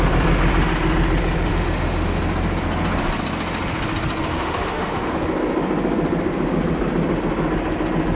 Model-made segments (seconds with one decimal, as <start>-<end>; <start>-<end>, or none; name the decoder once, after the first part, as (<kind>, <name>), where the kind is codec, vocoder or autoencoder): 1.5-2.2 (autoencoder, DAC-VAE); 4.3-5.1